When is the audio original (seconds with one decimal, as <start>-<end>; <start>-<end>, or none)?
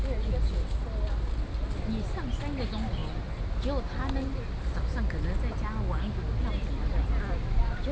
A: 0.0-7.9